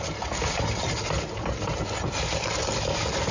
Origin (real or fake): real